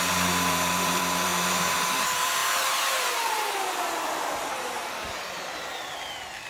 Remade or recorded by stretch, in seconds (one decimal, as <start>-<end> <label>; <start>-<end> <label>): 0.0-5.7 remade; 5.7-6.5 recorded